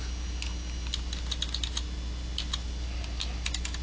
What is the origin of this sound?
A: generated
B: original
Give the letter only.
B